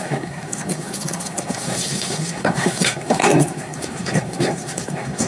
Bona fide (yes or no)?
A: no